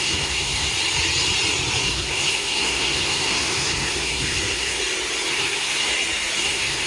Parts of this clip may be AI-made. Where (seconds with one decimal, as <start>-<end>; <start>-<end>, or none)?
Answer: 0.0-0.7; 1.8-4.8; 5.3-5.9; 6.4-6.9